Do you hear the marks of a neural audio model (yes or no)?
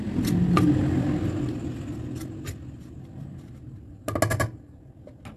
no